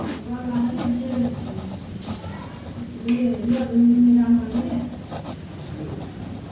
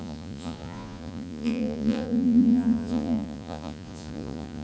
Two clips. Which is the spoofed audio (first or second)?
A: second